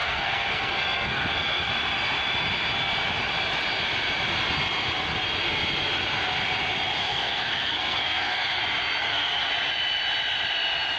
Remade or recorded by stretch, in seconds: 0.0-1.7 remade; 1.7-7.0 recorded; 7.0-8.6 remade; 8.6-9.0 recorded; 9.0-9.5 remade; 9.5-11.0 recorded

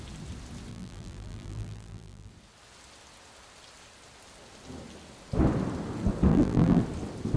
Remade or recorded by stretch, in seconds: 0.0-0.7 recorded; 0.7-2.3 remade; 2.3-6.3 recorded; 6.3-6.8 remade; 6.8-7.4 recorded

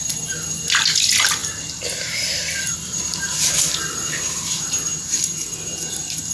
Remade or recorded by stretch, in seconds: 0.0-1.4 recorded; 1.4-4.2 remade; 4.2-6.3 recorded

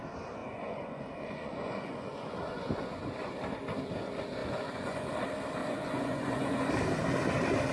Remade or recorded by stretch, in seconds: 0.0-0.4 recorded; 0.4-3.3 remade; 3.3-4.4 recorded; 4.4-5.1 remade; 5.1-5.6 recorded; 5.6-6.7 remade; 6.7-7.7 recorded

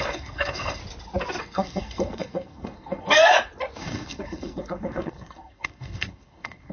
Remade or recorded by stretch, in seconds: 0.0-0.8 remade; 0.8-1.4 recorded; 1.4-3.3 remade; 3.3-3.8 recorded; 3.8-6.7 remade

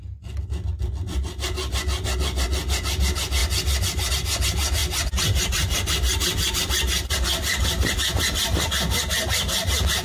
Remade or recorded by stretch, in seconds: 0.0-10.0 recorded